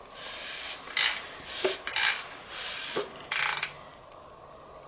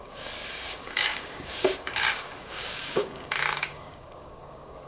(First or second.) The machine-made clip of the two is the second